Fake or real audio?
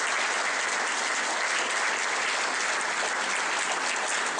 real